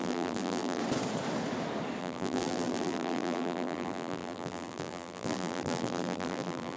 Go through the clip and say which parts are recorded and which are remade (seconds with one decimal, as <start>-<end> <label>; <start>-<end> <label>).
0.0-0.8 remade; 0.8-2.0 recorded; 2.0-6.8 remade